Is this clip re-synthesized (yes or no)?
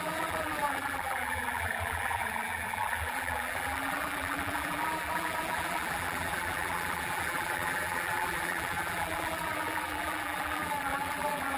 yes